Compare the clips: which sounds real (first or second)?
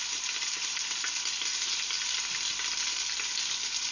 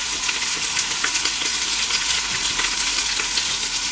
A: first